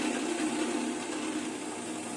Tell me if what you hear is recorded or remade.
recorded